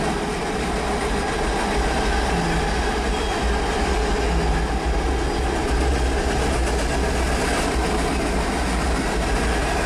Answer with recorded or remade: recorded